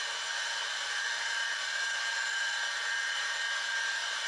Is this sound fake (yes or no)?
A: yes